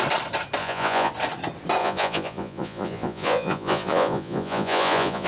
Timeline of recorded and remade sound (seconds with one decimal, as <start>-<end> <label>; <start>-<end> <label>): 0.0-0.6 recorded; 0.6-1.1 remade; 1.1-1.8 recorded; 1.8-5.3 remade